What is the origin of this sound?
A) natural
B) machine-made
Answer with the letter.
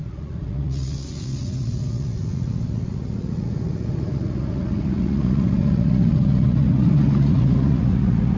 B